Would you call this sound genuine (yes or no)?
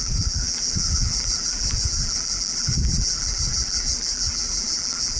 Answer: no